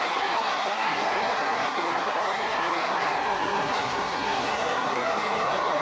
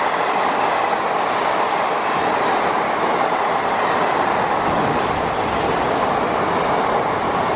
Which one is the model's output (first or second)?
first